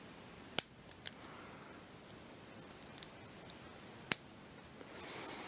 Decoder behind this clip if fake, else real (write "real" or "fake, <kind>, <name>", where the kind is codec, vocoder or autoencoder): real